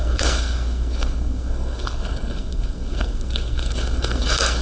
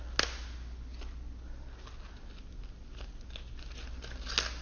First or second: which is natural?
second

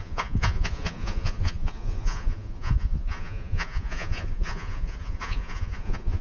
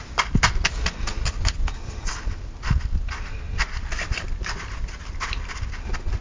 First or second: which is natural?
second